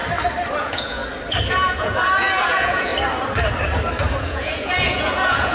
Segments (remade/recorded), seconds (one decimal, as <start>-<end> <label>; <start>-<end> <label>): 0.0-0.6 recorded; 0.6-1.0 remade; 1.0-1.5 recorded; 1.5-2.9 remade; 2.9-4.2 recorded; 4.2-5.5 remade